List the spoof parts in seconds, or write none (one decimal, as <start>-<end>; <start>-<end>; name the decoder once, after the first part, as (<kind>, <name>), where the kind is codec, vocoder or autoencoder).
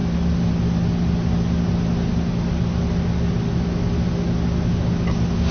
none